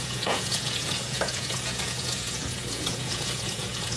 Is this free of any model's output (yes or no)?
no